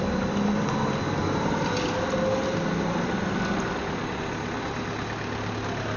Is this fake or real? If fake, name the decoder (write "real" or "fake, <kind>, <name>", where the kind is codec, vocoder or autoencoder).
real